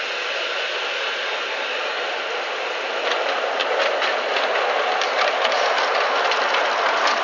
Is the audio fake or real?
real